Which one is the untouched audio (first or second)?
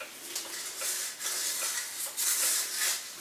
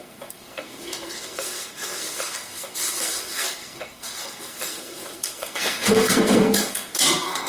first